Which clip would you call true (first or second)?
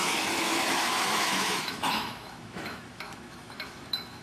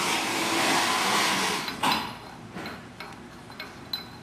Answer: second